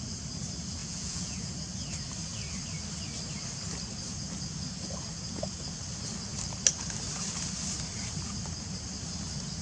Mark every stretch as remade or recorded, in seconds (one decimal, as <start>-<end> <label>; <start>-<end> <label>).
0.0-0.8 recorded; 0.8-1.6 remade; 1.6-9.6 recorded